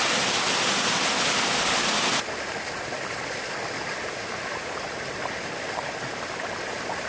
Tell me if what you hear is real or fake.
real